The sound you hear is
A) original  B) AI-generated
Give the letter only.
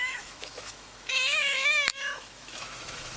B